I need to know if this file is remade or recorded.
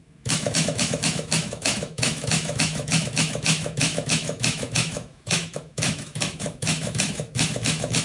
remade